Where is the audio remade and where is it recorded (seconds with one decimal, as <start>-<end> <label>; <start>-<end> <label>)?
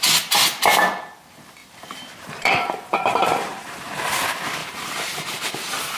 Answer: 0.0-1.6 recorded; 1.6-3.9 remade; 3.9-4.6 recorded; 4.6-5.3 remade; 5.3-6.0 recorded